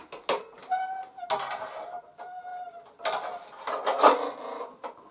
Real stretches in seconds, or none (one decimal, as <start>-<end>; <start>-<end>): 0.0-5.1